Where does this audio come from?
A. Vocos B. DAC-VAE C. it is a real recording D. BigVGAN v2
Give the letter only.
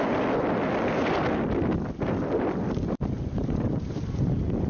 C